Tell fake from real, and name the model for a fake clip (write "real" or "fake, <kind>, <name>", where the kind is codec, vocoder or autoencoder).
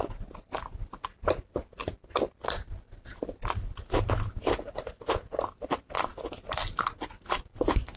real